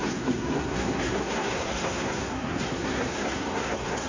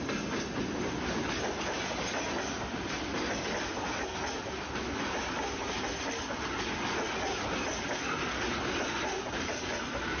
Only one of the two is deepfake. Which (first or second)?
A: first